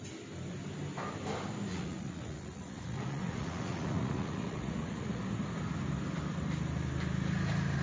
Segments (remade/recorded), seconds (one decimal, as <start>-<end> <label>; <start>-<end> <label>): 0.0-1.7 recorded; 1.7-5.2 remade; 5.2-7.8 recorded